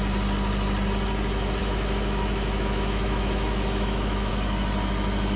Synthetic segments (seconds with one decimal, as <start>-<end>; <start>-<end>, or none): 1.6-4.3